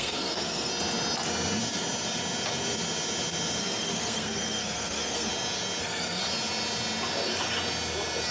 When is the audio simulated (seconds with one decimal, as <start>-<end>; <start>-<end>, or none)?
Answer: 0.0-0.7; 3.6-5.3; 5.8-6.2